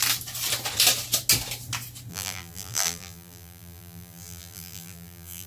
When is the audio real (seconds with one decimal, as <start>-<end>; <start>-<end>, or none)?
0.0-2.1